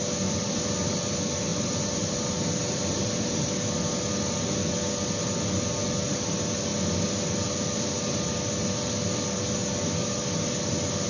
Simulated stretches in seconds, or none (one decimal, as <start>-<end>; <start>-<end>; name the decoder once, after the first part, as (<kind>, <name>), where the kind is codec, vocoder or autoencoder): 1.5-3.4 (vocoder, BigVGAN v2)

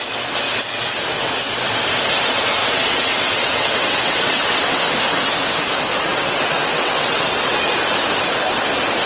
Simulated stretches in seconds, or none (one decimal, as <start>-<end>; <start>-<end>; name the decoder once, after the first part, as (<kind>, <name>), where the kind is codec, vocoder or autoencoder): 2.6-4.8 (vocoder, WaveNeXt); 6.1-7.6

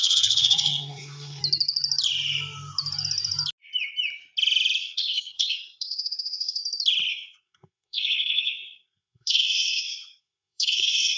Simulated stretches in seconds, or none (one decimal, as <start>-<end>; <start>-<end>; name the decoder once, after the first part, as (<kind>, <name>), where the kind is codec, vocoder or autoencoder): 0.0-1.4 (codec, SNAC); 4.8-6.6; 7.1-11.2

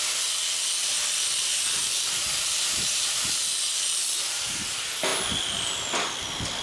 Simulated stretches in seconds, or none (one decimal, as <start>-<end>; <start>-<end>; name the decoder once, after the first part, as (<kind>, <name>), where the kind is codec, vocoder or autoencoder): 0.8-4.4 (vocoder, BigVGAN v2); 5.1-6.6

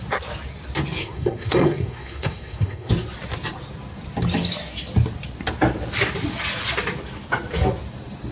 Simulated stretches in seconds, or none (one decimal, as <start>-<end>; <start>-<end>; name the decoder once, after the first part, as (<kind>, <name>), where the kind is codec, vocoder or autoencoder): 1.0-2.9 (codec, SNAC)